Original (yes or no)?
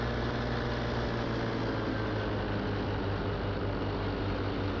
yes